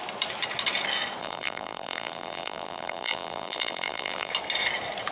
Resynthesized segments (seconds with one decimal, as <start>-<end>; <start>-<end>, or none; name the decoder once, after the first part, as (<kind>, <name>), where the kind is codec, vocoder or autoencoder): 1.2-4.3 (vocoder, BigVGAN v2)